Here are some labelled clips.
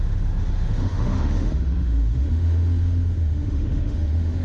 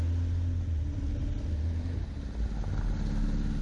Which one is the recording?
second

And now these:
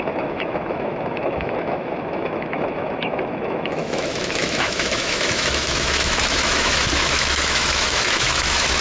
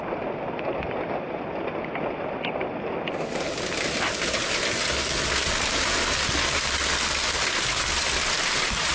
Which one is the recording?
second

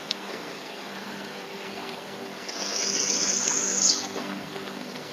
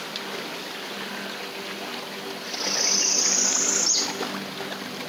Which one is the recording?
second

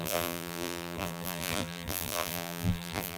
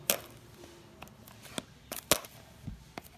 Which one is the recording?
second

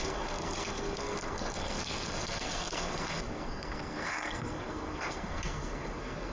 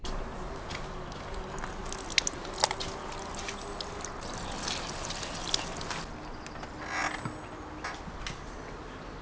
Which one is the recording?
second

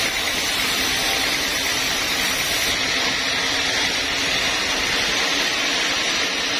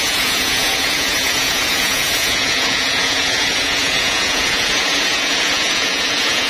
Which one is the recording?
first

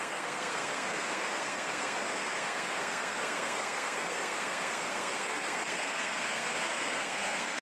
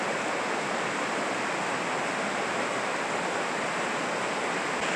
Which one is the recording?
second